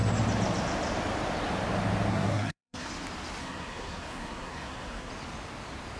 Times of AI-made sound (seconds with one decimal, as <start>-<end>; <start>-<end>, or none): 2.1-2.9; 3.4-5.1

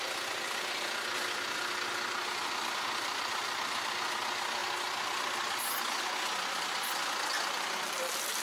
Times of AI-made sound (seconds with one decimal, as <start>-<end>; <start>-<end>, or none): none

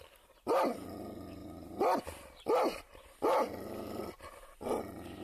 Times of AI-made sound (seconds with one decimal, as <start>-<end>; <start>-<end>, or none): none

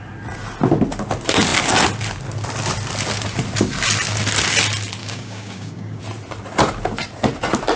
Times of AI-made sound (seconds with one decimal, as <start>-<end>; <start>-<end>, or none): 5.0-6.0